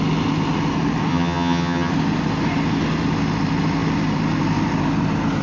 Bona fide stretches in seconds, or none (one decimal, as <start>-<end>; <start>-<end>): 0.0-1.1; 1.9-5.4